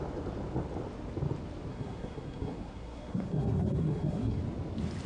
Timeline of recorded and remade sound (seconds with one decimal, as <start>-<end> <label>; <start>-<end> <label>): 0.0-1.7 recorded; 1.7-4.4 remade; 4.4-5.1 recorded